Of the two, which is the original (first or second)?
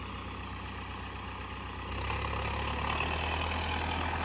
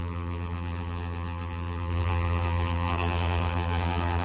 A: first